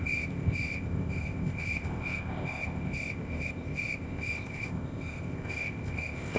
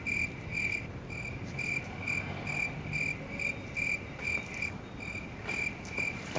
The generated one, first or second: first